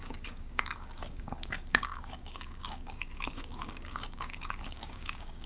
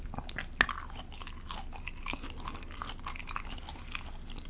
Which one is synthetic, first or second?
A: first